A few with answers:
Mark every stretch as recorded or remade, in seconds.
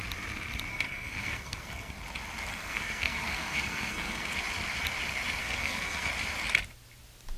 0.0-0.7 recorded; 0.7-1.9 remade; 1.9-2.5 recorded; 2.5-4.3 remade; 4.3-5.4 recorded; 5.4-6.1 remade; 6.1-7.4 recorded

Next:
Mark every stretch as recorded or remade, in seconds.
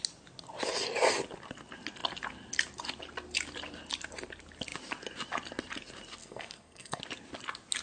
0.0-6.2 recorded; 6.2-7.0 remade; 7.0-7.8 recorded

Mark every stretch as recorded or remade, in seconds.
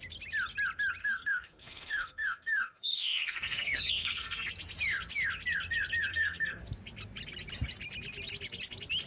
0.0-1.0 recorded; 1.0-4.5 remade; 4.5-6.1 recorded; 6.1-6.6 remade; 6.6-9.1 recorded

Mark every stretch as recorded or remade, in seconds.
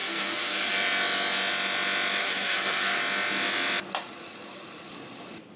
0.0-0.7 remade; 0.7-2.2 recorded; 2.2-3.0 remade; 3.0-5.6 recorded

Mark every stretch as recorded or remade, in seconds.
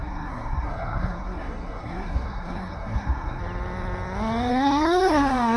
0.0-3.4 remade; 3.4-4.5 recorded; 4.5-5.6 remade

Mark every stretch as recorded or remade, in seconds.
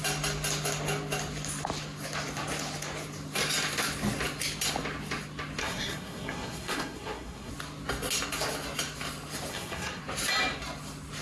0.0-5.6 recorded; 5.6-7.5 remade; 7.5-9.5 recorded; 9.5-10.0 remade; 10.0-11.2 recorded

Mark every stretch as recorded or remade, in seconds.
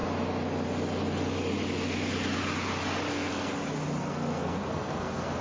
0.0-3.1 recorded; 3.1-3.5 remade; 3.5-4.0 recorded; 4.0-5.4 remade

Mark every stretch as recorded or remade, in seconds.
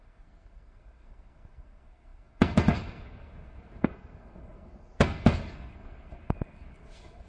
0.0-7.3 remade